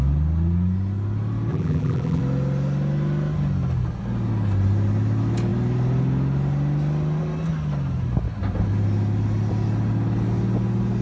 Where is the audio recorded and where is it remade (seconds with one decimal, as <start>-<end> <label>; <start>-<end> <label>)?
0.0-1.5 recorded; 1.5-2.2 remade; 2.2-11.0 recorded